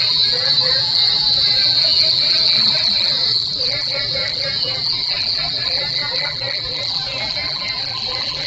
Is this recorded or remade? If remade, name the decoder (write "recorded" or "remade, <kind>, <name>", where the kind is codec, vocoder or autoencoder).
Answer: remade, vocoder, BigVGAN v2